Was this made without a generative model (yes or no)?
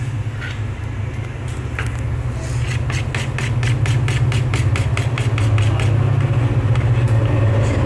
yes